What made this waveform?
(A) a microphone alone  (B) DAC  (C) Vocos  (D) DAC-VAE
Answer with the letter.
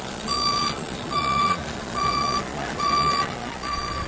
C